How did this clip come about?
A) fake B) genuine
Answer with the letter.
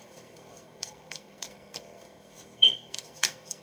A